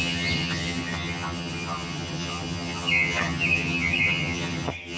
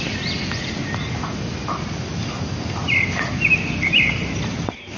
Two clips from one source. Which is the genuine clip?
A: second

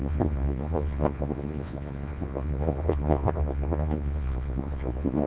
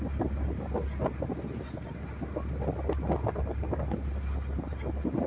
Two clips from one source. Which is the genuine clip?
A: second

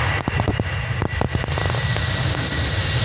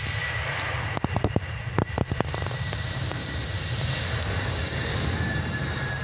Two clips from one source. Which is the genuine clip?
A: first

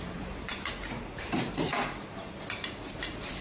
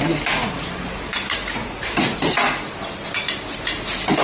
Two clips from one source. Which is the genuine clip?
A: second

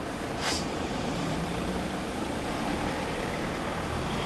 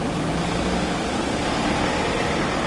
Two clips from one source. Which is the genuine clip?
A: second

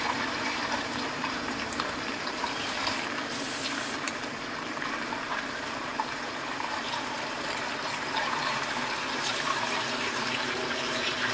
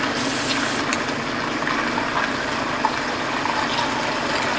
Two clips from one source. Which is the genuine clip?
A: second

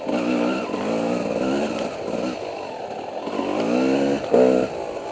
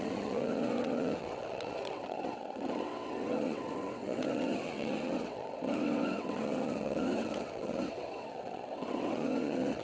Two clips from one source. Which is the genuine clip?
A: first